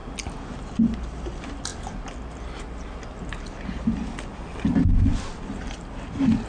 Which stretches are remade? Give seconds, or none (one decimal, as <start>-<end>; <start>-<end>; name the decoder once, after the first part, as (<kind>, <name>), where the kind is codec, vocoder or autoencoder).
none